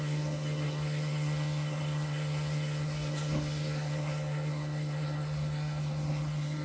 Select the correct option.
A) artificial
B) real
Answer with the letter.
A